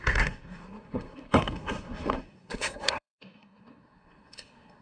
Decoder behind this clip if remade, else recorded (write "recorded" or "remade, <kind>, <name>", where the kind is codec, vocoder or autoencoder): remade, codec, SNAC